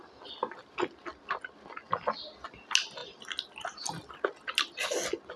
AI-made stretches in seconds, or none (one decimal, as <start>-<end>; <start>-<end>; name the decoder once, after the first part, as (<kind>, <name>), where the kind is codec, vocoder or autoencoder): none